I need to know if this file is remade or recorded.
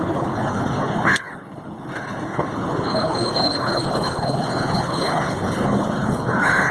remade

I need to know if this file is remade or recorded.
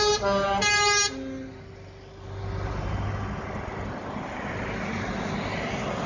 recorded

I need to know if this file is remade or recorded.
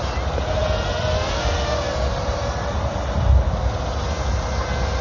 recorded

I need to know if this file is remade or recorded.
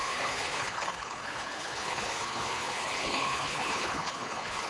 remade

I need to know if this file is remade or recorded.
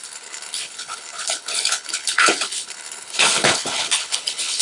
remade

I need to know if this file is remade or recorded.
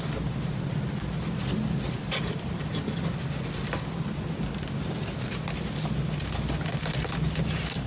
recorded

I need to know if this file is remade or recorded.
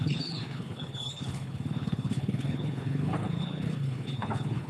remade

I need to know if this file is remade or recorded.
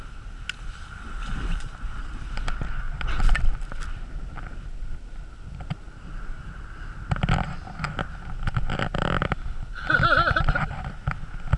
recorded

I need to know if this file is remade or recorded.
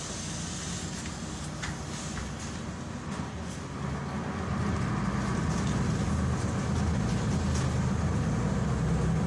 recorded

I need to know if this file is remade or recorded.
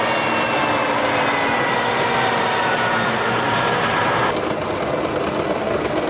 recorded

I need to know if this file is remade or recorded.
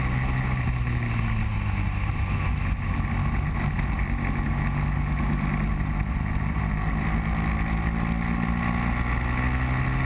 recorded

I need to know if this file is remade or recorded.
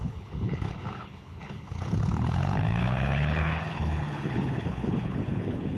remade